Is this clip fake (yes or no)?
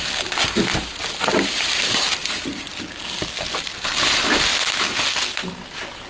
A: no